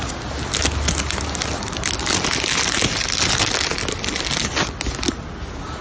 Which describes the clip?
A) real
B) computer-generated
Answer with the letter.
A